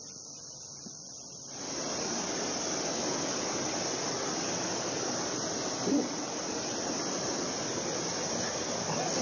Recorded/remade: remade